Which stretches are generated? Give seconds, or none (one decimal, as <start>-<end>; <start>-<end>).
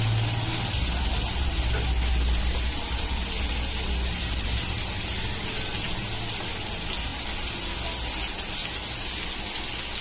none